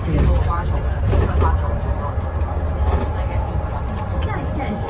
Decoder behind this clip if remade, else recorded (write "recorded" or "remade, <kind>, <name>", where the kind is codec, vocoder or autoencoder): recorded